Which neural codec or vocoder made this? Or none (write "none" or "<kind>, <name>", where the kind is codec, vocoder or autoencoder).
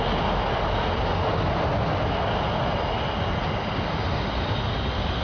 none